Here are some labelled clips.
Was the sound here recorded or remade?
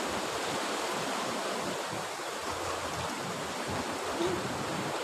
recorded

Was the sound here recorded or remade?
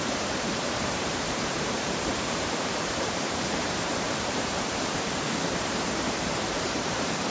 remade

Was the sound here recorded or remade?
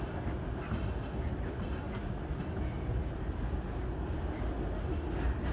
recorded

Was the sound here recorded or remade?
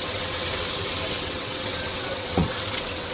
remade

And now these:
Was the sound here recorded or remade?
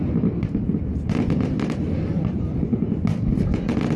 recorded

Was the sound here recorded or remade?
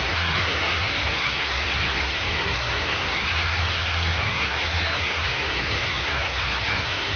remade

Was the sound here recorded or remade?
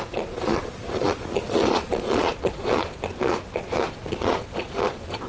remade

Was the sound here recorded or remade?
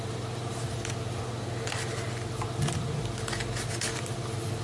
remade